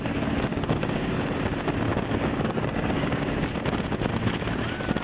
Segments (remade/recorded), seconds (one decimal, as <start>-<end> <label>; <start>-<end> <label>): 0.0-0.5 recorded; 0.5-1.1 remade; 1.1-1.9 recorded; 1.9-3.2 remade; 3.2-5.0 recorded